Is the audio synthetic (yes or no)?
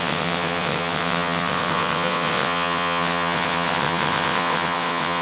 yes